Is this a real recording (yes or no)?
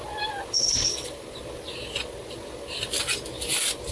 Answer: yes